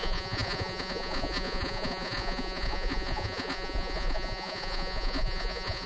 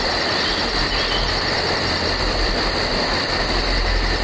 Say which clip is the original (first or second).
second